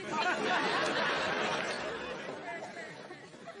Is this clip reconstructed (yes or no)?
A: no